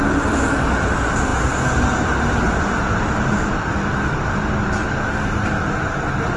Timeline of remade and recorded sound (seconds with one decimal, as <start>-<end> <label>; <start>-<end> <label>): 0.0-6.4 recorded